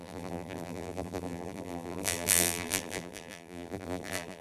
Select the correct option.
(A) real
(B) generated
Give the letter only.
B